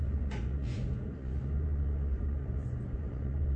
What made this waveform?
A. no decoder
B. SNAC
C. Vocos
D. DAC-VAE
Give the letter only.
C